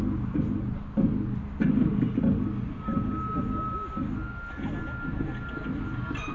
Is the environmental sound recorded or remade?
recorded